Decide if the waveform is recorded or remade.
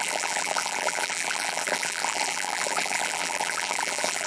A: remade